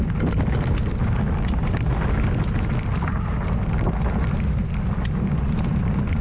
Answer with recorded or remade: recorded